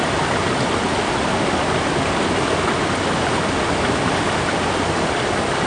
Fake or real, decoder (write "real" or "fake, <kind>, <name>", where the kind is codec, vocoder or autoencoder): real